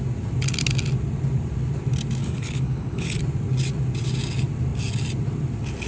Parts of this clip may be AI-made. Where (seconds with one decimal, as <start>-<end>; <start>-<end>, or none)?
2.2-3.2